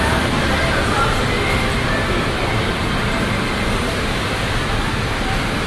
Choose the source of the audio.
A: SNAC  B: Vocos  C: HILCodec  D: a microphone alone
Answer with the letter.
D